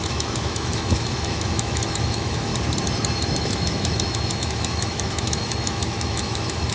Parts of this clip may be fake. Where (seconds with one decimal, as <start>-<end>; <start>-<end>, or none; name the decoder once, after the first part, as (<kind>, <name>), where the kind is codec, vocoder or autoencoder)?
0.0-2.5 (autoencoder, DAC-VAE); 3.4-6.7